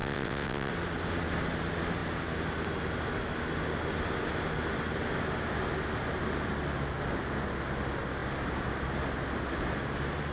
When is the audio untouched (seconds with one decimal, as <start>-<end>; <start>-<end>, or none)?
0.7-10.3